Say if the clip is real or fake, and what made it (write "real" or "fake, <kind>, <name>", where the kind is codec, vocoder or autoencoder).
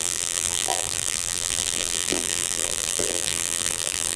fake, vocoder, BigVGAN v2